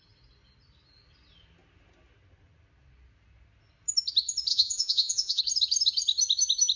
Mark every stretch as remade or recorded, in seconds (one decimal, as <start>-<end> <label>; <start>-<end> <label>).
0.0-4.5 recorded; 4.5-5.4 remade; 5.4-6.8 recorded

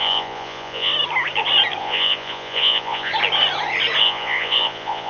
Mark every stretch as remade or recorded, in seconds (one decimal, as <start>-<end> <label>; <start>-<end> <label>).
0.0-0.9 remade; 0.9-1.8 recorded; 1.8-3.1 remade; 3.1-4.0 recorded; 4.0-5.1 remade

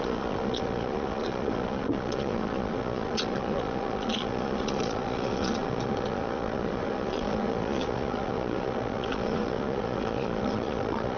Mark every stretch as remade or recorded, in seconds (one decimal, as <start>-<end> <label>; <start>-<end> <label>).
0.0-11.2 remade